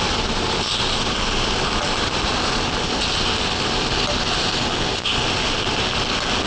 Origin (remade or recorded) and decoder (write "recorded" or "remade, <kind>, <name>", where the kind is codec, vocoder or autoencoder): recorded